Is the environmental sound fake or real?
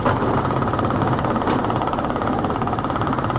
real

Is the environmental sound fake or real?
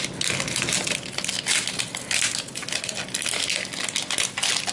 real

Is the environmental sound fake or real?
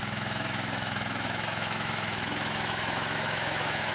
fake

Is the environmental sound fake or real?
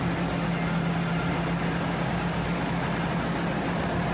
real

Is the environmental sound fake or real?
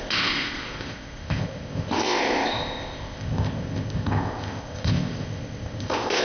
fake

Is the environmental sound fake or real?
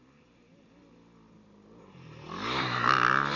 real